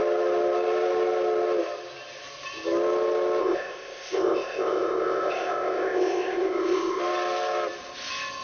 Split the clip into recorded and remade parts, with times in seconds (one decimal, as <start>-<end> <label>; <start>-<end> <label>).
0.0-3.4 recorded; 3.4-7.0 remade; 7.0-8.4 recorded